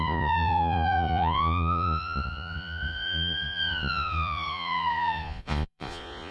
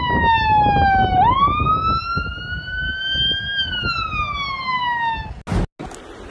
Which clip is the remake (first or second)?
first